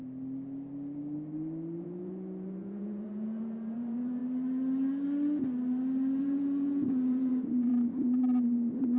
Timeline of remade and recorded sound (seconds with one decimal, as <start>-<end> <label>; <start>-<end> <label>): 0.0-1.8 recorded; 1.8-4.2 remade; 4.2-6.2 recorded; 6.2-7.7 remade; 7.7-9.0 recorded

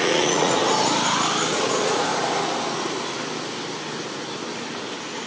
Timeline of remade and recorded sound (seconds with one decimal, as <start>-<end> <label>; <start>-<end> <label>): 0.0-0.6 remade; 0.6-1.5 recorded; 1.5-2.1 remade; 2.1-5.3 recorded

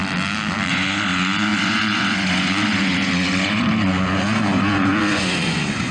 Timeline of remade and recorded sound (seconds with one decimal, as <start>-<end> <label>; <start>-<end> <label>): 0.0-0.7 recorded; 0.7-5.9 remade

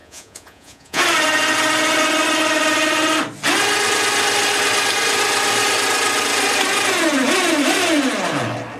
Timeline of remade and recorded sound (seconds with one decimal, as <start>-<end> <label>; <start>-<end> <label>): 0.0-1.0 remade; 1.0-8.8 recorded